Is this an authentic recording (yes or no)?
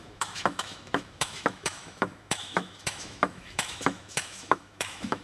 no